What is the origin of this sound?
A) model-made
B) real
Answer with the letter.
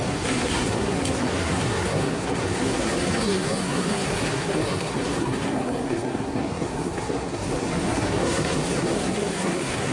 A